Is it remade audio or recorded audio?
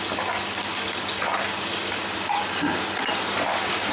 recorded